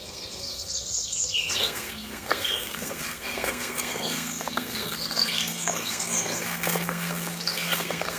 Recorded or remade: remade